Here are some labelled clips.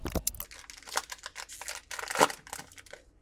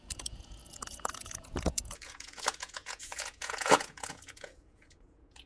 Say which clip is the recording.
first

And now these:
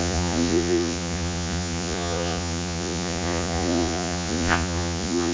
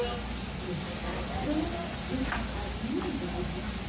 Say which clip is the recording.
second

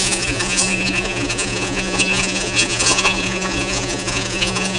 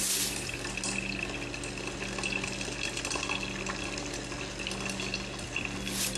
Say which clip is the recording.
second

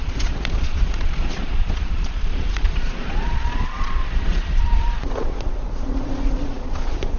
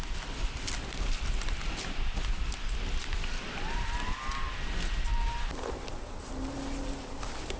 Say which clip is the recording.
second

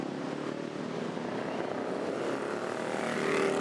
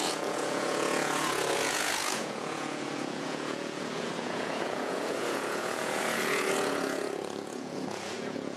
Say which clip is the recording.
first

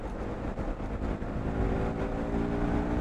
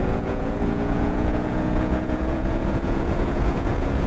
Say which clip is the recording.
first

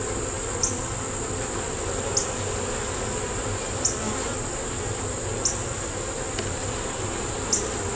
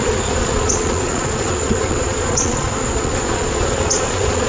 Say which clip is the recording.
first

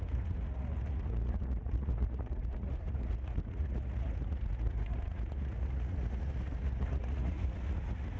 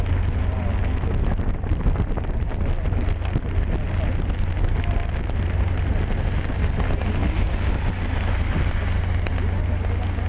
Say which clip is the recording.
second